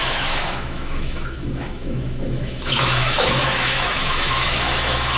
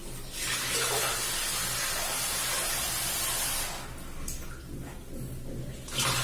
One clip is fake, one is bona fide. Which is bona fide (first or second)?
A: second